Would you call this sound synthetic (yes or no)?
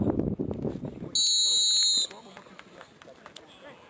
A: no